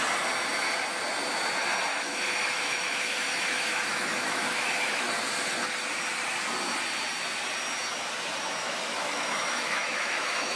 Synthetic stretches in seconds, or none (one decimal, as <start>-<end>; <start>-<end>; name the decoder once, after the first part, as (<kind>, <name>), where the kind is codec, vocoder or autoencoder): 1.9-5.1 (autoencoder, DAC-VAE); 8.6-10.6